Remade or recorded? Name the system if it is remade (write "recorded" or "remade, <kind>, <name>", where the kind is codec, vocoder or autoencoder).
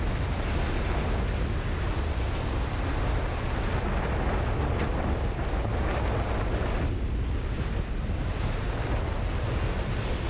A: recorded